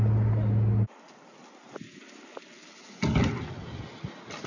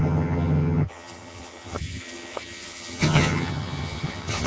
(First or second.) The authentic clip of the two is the first